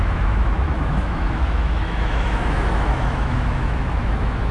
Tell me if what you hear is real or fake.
fake